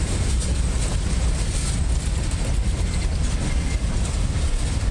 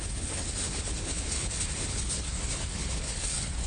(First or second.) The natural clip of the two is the first